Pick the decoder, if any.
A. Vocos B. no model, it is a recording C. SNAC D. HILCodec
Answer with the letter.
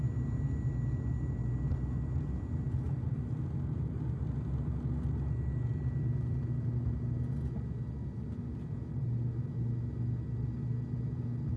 B